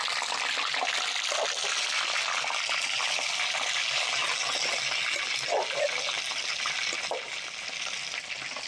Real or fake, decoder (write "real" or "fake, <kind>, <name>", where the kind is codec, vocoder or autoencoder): real